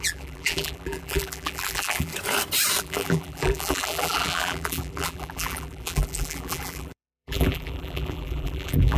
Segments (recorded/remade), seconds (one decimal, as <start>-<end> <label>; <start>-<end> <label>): 0.0-2.1 remade; 2.1-2.8 recorded; 2.8-9.0 remade